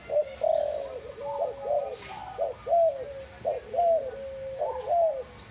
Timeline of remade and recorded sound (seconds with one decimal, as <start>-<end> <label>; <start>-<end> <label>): 0.0-5.5 recorded

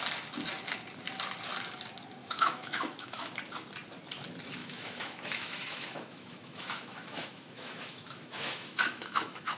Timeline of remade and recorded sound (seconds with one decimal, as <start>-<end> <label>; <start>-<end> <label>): 0.0-2.2 recorded; 2.2-3.3 remade; 3.3-4.6 recorded; 4.6-9.6 remade

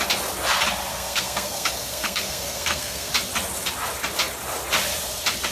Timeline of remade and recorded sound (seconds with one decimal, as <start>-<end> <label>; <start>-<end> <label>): 0.0-0.9 recorded; 0.9-3.1 remade; 3.1-5.5 recorded

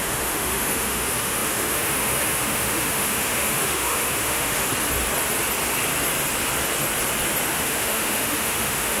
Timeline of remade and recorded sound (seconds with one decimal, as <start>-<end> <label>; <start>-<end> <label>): 0.0-4.7 remade; 4.7-7.5 recorded; 7.5-9.0 remade

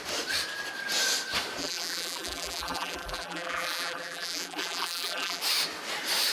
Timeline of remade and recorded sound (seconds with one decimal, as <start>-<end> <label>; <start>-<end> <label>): 0.0-1.6 recorded; 1.6-5.4 remade; 5.4-6.3 recorded

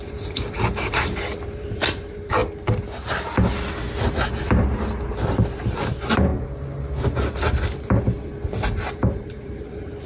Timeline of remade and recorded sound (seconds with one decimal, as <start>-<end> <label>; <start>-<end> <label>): 0.0-2.4 remade; 2.4-5.1 recorded; 5.1-6.3 remade; 6.3-8.9 recorded; 8.9-10.1 remade